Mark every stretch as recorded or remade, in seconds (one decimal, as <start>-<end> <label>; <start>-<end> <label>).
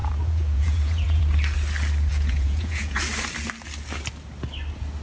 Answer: 0.0-1.2 remade; 1.2-2.1 recorded; 2.1-3.0 remade; 3.0-5.0 recorded